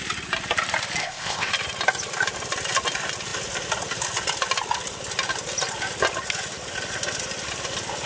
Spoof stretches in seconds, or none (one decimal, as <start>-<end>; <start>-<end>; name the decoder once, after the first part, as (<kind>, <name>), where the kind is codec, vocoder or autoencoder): 1.0-1.5 (codec, ZipCodec)